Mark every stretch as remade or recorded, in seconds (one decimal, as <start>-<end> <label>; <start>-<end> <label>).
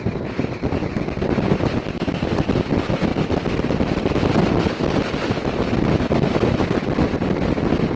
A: 0.0-8.0 recorded